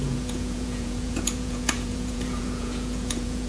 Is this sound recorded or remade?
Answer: remade